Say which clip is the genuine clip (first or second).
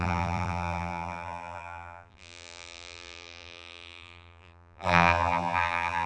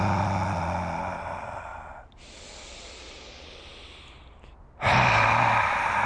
second